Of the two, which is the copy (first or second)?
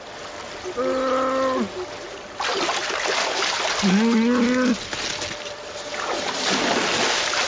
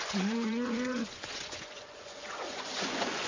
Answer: second